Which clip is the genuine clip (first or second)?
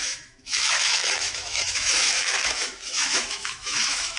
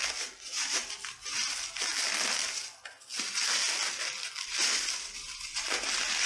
second